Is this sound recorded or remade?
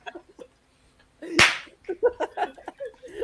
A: recorded